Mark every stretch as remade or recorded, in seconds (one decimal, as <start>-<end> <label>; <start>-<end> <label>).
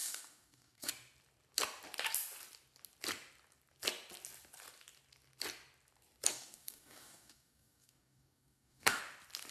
0.0-0.9 remade; 0.9-6.3 recorded; 6.3-9.0 remade; 9.0-9.5 recorded